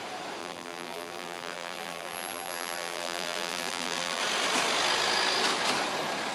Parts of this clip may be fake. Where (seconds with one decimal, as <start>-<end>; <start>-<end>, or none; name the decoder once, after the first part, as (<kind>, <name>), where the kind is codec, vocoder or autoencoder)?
0.4-4.2 (vocoder, BigVGAN v2)

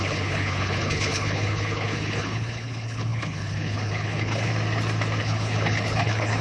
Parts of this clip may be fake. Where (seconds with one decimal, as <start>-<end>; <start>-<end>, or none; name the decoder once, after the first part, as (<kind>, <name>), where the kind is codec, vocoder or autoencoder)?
0.0-4.5 (codec, HILCodec); 5.2-6.4

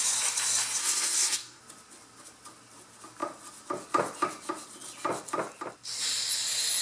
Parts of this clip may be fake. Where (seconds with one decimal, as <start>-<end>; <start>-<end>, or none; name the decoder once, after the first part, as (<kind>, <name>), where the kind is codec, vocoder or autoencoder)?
0.8-1.6 (codec, SNAC)

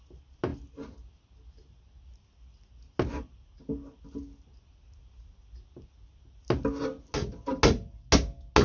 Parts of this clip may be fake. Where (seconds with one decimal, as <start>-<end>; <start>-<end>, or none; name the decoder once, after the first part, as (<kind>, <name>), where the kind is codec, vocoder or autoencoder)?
none

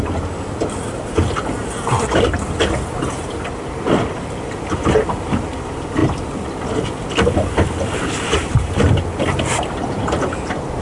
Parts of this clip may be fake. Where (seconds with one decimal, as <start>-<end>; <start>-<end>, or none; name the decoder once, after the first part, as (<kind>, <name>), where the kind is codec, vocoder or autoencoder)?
none

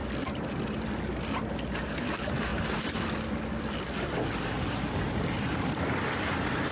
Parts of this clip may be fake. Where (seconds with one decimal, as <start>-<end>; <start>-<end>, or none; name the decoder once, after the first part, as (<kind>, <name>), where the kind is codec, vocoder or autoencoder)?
1.8-6.7 (vocoder, BigVGAN v2)